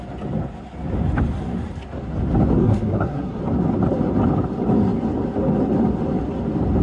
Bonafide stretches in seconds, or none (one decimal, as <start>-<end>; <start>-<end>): 0.0-2.6; 3.4-6.8